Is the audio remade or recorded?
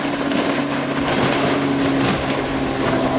recorded